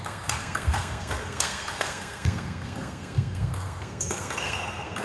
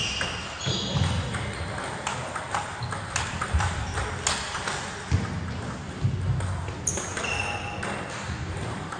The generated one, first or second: first